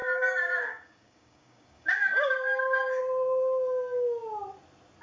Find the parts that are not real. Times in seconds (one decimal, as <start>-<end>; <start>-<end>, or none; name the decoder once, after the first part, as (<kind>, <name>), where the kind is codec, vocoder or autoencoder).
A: 0.0-3.0 (codec, DAC)